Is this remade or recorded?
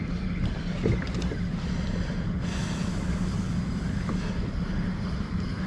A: recorded